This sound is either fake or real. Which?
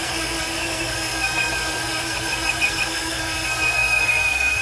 fake